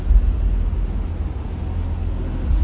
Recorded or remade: recorded